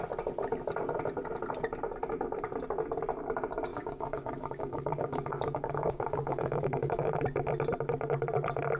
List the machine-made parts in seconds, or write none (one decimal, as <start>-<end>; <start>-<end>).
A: 3.7-7.1